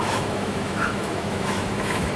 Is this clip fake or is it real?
fake